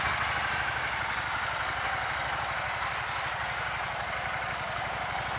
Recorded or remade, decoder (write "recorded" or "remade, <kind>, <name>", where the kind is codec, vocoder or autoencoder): recorded